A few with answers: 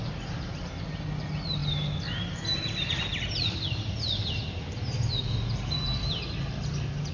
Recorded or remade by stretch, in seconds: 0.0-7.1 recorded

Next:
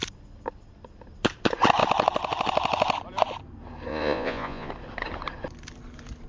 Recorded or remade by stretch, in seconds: 0.0-3.9 recorded; 3.9-4.7 remade; 4.7-6.3 recorded